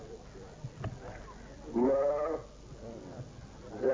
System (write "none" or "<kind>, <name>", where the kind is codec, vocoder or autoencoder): none